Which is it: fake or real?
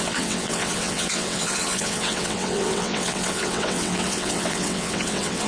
fake